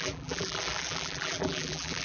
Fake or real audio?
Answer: fake